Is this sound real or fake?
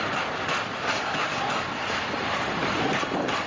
fake